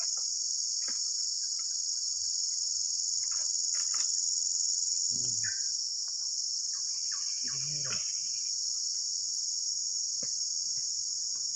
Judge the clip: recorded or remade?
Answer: recorded